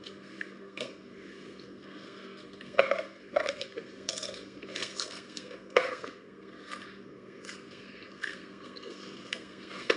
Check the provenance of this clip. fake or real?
fake